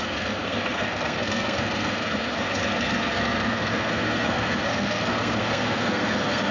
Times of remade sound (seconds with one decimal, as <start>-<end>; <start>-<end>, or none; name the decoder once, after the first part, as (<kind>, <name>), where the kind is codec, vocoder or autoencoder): 0.0-6.5 (codec, SNAC)